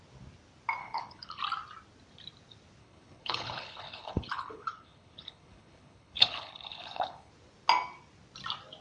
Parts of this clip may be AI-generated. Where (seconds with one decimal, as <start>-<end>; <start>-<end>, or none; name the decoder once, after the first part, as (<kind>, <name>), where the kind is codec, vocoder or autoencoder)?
0.8-1.4 (codec, HILCodec); 2.8-7.3

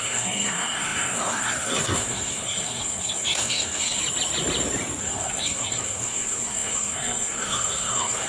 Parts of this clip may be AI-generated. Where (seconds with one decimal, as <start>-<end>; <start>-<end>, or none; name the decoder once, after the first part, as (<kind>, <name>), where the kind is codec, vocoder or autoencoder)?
0.0-4.0 (codec, SNAC); 5.0-8.3

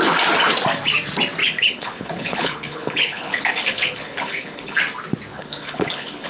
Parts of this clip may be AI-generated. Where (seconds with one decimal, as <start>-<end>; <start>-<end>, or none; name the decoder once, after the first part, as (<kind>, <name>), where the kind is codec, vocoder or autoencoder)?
1.4-4.8 (codec, HILCodec); 5.3-6.3

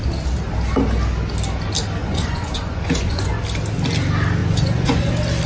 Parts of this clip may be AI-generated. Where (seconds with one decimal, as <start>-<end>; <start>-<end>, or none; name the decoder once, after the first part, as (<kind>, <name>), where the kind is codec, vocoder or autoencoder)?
2.0-3.3 (vocoder, Vocos); 4.4-5.1

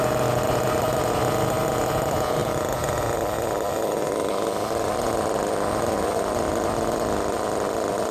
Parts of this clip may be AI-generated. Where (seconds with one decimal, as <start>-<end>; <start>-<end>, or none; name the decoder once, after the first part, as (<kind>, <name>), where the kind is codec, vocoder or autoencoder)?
2.4-3.7 (vocoder, BigVGAN v2); 4.2-4.9